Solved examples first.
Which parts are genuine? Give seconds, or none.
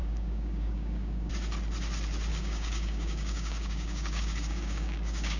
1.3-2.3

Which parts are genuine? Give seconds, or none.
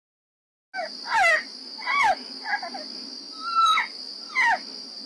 0.0-5.1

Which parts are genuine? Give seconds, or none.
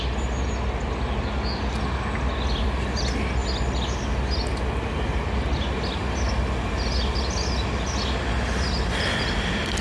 0.0-9.8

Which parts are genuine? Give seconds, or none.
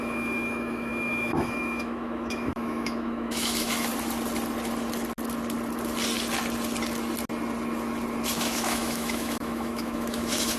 3.9-8.3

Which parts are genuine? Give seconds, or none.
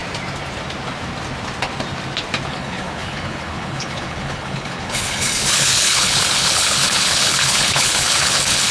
0.0-2.5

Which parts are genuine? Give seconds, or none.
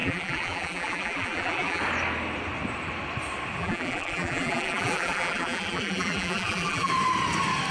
1.8-3.6; 6.9-7.7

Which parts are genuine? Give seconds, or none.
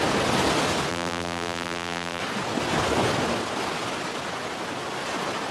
0.0-0.9; 2.2-5.5